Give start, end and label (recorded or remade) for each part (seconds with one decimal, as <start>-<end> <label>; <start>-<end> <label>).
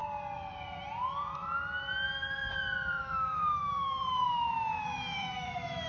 0.0-3.0 recorded; 3.0-5.9 remade